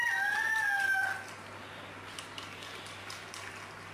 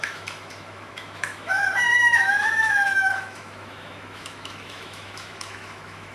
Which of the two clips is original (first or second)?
first